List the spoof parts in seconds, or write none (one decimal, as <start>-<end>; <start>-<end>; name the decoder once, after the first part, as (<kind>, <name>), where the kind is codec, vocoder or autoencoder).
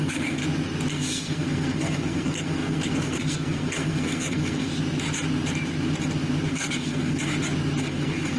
0.0-0.4 (codec, SNAC); 0.9-4.7; 6.5-7.3; 7.8-8.4